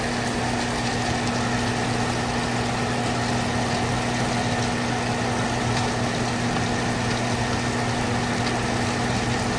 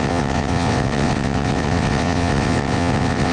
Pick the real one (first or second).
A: first